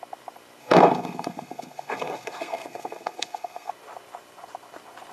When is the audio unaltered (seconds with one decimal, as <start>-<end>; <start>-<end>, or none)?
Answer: 0.0-0.6; 3.7-5.1